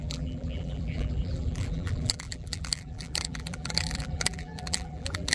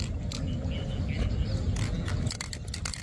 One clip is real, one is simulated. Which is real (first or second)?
second